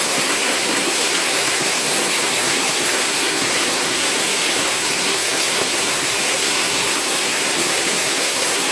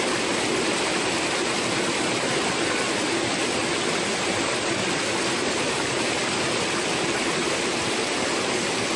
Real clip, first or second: second